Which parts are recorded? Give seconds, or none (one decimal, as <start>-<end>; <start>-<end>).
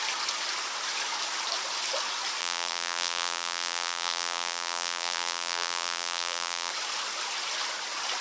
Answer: 0.0-2.4; 6.7-8.2